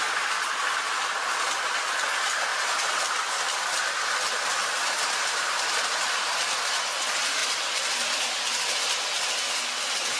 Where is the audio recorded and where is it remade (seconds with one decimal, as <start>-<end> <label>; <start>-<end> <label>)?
0.0-2.5 recorded; 2.5-3.0 remade; 3.0-4.6 recorded; 4.6-5.8 remade; 5.8-10.2 recorded